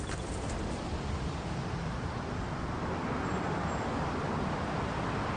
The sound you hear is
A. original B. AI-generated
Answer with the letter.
A